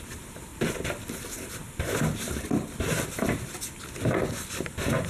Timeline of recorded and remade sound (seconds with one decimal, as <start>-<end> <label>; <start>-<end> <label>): 0.0-0.5 recorded; 0.5-1.1 remade; 1.1-5.1 recorded